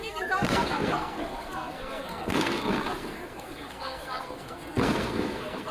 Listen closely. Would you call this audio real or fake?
fake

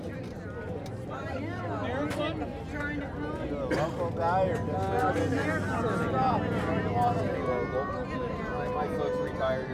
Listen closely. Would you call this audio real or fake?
real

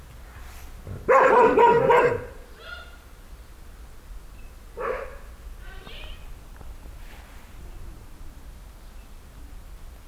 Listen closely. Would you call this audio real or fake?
real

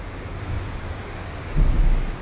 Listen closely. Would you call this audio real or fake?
fake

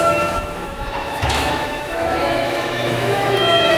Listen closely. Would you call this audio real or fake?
fake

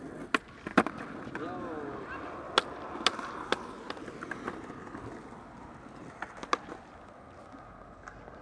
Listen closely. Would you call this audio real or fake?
real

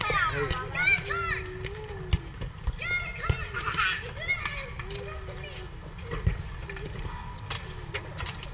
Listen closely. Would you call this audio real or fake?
real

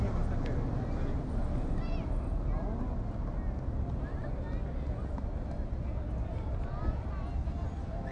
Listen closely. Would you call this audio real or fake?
real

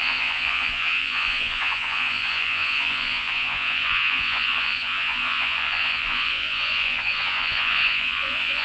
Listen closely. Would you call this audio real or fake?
fake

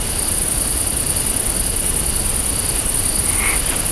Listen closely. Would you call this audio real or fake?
real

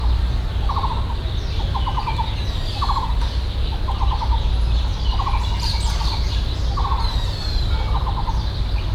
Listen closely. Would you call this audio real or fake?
real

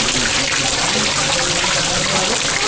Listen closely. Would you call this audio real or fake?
real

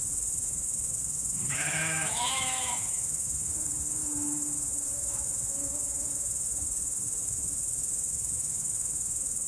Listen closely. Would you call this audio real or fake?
fake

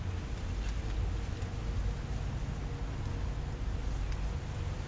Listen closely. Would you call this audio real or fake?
real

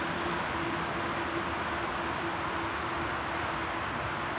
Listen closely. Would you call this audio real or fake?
real